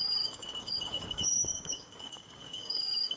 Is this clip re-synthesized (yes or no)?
yes